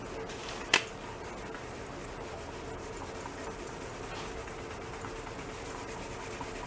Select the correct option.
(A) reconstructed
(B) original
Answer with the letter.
B